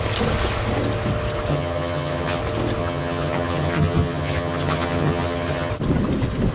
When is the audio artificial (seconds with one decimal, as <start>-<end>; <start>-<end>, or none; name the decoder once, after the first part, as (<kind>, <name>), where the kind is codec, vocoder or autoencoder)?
1.5-2.4 (vocoder, HiFi-GAN); 2.8-5.7